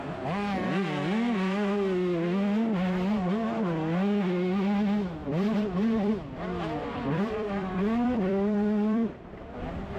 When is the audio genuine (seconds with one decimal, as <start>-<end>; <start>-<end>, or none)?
0.0-5.2; 6.1-6.8; 9.5-10.0